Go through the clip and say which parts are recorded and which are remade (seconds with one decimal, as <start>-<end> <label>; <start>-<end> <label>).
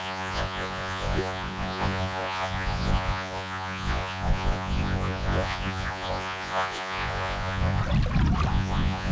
0.0-7.8 remade; 7.8-8.5 recorded; 8.5-9.1 remade